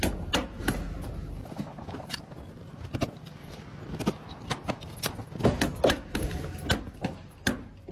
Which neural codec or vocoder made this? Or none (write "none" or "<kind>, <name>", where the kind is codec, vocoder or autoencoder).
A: none